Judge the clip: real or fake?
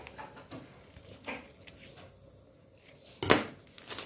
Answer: real